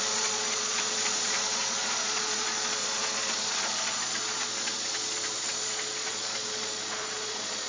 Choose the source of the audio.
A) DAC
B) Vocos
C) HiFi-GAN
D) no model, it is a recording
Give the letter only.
B